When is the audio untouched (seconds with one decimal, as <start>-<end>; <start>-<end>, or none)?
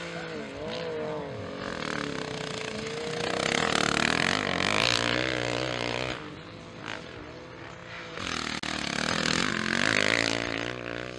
0.0-11.2